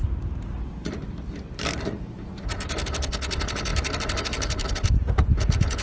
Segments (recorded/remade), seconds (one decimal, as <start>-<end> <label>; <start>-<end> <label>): 0.0-3.1 remade; 3.1-3.7 recorded; 3.7-4.7 remade; 4.7-5.8 recorded